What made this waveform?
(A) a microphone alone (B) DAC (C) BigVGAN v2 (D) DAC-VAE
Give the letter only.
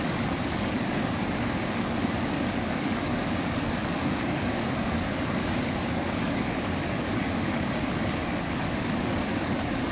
B